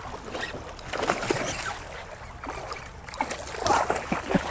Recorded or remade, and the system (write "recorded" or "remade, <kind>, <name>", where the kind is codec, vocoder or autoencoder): recorded